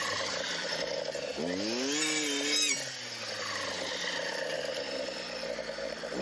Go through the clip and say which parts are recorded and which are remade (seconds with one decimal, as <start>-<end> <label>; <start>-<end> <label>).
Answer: 0.0-0.7 remade; 0.7-6.2 recorded